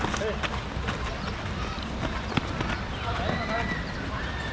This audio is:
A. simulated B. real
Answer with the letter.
B